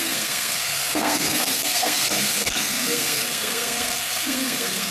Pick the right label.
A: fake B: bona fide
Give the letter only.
A